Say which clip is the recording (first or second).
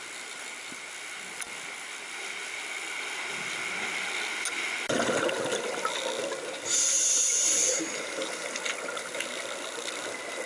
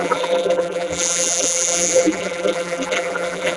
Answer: first